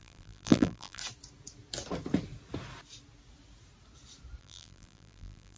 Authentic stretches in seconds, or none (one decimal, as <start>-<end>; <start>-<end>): 1.0-4.4